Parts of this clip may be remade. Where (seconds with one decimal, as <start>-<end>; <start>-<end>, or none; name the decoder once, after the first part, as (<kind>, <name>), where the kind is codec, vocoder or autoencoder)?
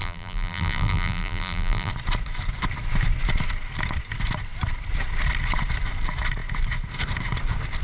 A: 0.0-1.9 (vocoder, BigVGAN v2)